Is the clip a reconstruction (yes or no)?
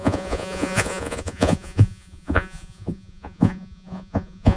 yes